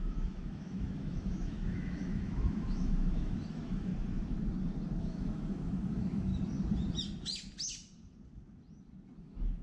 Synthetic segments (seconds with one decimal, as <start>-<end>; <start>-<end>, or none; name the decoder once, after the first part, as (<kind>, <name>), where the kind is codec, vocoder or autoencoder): 0.0-3.9 (autoencoder, DAC-VAE); 5.0-6.3; 9.2-9.6